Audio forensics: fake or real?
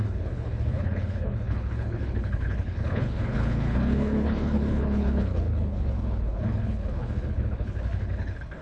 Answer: fake